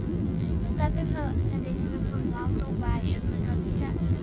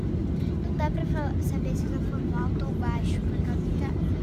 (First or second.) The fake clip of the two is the first